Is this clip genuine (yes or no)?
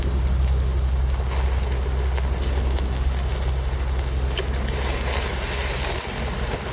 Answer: yes